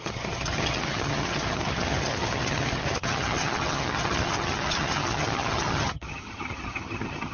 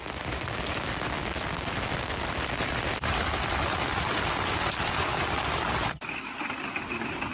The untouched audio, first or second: second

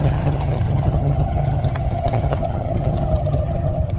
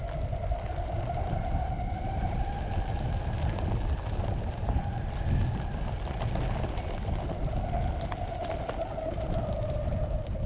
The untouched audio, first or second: second